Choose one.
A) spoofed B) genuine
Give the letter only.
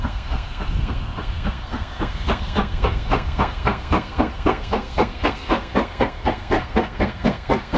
A